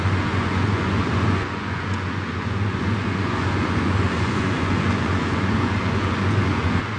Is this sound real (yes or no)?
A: no